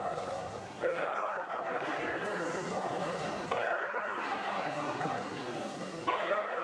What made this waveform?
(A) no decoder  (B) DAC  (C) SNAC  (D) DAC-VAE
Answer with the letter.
C